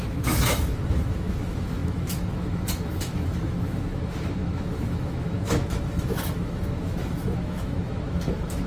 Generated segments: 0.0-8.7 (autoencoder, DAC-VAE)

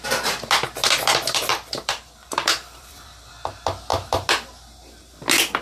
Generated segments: 1.5-3.3 (vocoder, BigVGAN v2)

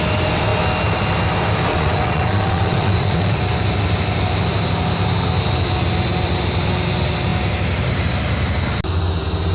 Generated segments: 1.7-3.4 (vocoder, WaveNeXt)